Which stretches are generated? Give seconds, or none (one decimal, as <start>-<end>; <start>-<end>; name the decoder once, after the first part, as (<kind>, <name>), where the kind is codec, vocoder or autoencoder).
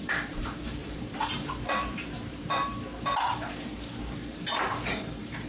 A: 0.0-5.5 (vocoder, BigVGAN v2)